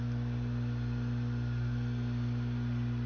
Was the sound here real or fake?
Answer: real